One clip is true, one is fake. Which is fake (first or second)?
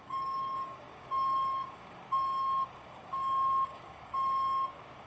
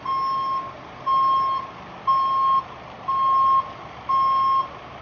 first